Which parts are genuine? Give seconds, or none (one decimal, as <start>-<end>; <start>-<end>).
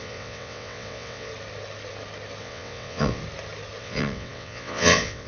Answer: 1.3-2.4; 3.2-3.8